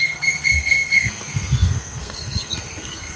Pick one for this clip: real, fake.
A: fake